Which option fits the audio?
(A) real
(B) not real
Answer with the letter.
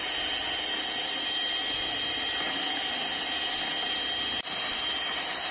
A